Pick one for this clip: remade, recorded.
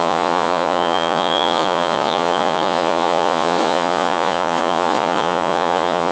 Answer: remade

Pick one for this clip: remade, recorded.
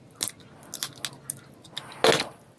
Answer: recorded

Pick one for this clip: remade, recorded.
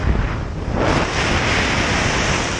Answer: recorded